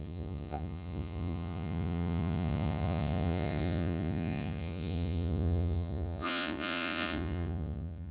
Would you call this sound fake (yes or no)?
yes